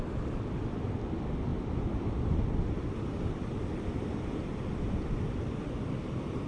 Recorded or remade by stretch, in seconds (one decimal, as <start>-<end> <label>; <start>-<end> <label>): 0.0-6.5 recorded